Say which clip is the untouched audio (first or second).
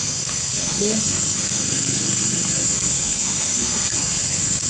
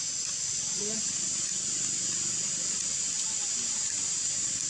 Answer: second